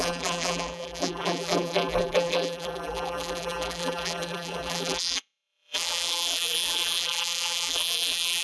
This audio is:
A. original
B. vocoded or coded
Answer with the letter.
B